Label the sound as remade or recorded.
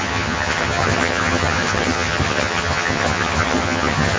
remade